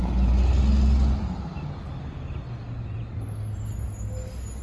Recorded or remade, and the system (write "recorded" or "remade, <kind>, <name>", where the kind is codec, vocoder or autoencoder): recorded